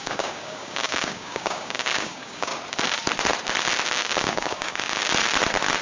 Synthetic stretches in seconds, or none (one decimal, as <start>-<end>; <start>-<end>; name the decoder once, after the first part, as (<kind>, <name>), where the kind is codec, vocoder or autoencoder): 0.0-2.5 (codec, DAC); 4.2-5.0